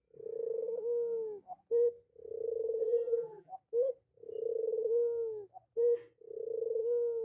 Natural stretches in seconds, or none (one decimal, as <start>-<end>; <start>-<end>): 0.0-2.8; 3.5-7.2